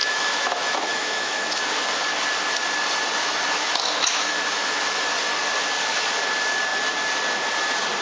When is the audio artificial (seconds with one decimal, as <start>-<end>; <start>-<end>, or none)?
0.0-1.6; 3.2-5.0